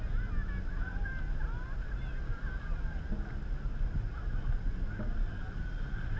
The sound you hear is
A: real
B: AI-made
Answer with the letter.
A